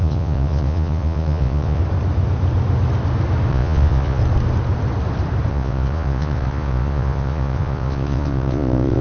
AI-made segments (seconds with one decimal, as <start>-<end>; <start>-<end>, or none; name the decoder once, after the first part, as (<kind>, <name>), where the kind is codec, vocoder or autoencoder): 0.0-1.8 (vocoder, Vocos); 3.5-4.2; 5.5-9.0